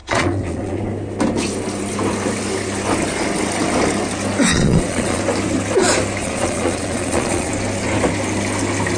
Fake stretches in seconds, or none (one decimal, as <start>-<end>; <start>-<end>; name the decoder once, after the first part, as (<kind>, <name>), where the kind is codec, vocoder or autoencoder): 0.0-0.8 (vocoder, Vocos); 4.5-5.2; 6.2-7.5

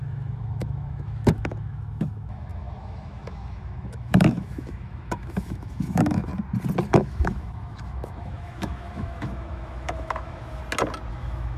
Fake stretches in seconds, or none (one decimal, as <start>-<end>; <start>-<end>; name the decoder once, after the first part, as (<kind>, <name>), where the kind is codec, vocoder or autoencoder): 0.0-6.3 (autoencoder, DAC-VAE); 6.9-10.6; 11.1-11.6

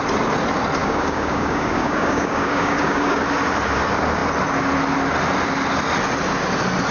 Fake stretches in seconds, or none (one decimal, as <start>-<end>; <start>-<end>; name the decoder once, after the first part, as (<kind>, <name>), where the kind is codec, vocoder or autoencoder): 0.8-3.2 (codec, DAC)

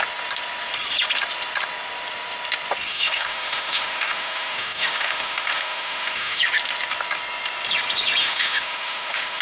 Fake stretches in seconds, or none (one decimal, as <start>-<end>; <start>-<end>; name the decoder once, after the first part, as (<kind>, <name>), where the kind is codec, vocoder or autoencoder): 2.9-6.4 (autoencoder, DAC-VAE); 8.2-9.4

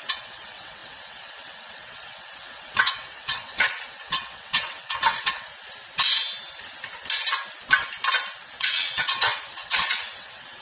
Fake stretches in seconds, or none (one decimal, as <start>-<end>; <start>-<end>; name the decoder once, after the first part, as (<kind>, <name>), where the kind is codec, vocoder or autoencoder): 0.0-5.5 (vocoder, WaveNeXt); 8.6-10.6

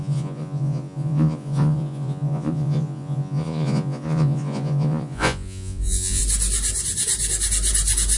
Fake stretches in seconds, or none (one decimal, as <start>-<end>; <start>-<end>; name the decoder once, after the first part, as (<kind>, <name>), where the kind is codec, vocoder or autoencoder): 0.0-6.2 (vocoder, Vocos)